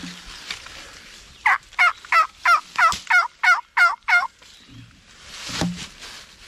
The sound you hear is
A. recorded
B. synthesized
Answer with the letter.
A